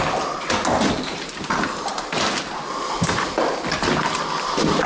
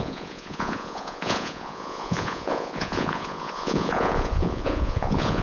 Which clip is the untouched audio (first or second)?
first